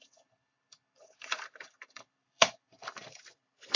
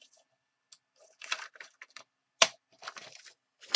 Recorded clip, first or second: second